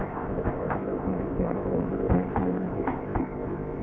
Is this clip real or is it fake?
fake